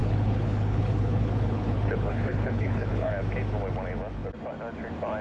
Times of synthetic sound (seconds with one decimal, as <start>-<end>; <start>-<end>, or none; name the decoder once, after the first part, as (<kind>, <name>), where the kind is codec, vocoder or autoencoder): 0.0-3.1 (codec, HILCodec)